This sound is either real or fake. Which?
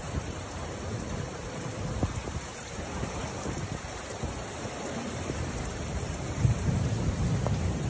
fake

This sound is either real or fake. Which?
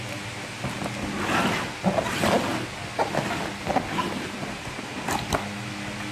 real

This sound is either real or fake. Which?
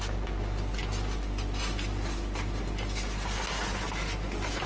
real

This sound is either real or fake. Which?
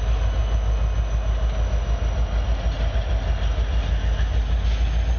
real